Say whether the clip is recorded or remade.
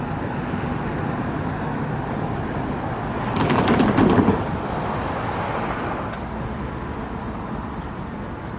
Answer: recorded